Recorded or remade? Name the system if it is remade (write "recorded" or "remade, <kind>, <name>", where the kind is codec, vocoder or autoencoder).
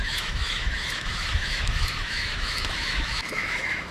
remade, autoencoder, DAC-VAE